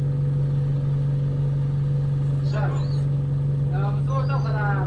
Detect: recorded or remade recorded